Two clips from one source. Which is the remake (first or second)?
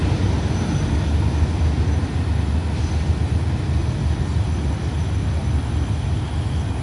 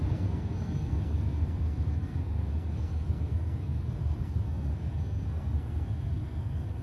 second